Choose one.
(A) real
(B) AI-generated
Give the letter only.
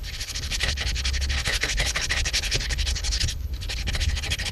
B